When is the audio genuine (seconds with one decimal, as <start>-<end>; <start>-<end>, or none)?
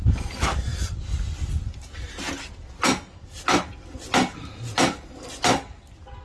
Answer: 0.0-6.2